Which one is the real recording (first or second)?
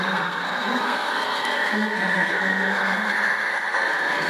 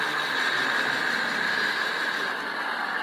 second